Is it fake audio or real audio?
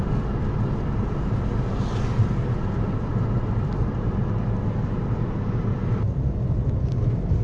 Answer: real